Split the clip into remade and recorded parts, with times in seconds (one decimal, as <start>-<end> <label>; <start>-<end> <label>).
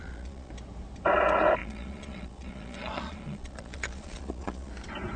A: 0.0-0.5 remade; 0.5-1.6 recorded; 1.6-4.7 remade; 4.7-5.2 recorded